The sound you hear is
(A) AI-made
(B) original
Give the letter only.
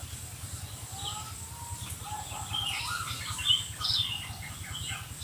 B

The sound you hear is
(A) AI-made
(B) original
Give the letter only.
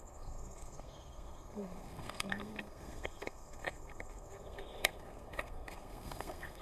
A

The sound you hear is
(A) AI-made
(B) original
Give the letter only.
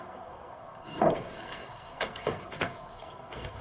A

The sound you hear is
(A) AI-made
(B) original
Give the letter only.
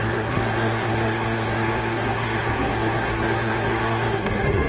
A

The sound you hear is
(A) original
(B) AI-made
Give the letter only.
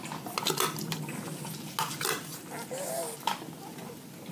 A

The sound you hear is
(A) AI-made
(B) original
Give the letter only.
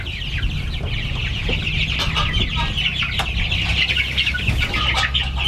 B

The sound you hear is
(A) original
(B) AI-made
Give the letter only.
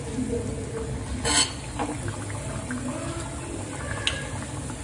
A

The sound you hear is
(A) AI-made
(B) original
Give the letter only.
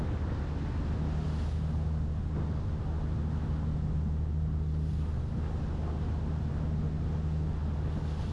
B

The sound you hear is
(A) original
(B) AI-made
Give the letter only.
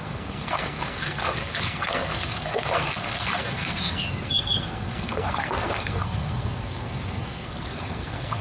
B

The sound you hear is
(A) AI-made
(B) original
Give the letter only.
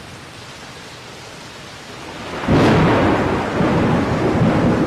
B